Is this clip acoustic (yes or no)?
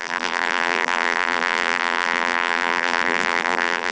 no